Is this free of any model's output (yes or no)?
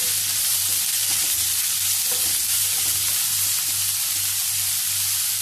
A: yes